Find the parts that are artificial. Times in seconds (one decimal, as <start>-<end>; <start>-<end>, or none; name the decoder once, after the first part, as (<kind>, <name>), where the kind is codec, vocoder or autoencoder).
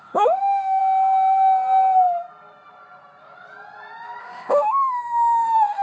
0.0-0.8 (autoencoder, DAC-VAE); 4.2-5.8